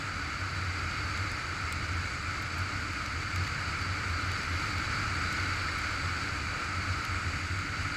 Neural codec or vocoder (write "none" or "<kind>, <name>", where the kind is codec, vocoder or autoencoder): none